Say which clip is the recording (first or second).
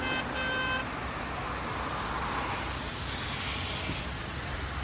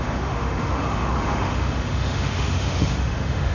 first